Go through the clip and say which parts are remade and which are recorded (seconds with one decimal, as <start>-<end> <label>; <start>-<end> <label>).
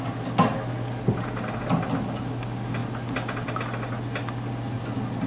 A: 0.0-5.3 recorded